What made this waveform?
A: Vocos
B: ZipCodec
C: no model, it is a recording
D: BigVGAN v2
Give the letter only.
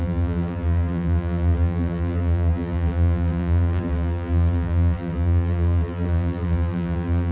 D